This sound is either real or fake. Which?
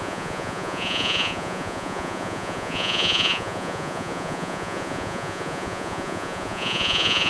fake